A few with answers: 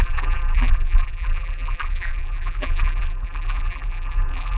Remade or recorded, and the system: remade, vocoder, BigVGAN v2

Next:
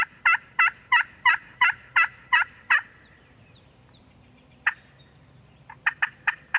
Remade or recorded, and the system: remade, vocoder, BigVGAN v2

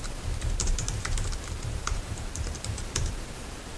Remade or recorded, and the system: remade, vocoder, BigVGAN v2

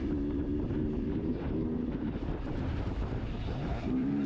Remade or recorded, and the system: remade, vocoder, BigVGAN v2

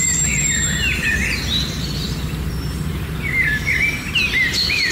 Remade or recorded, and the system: remade, vocoder, BigVGAN v2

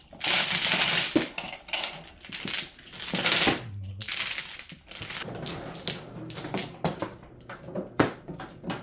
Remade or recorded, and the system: recorded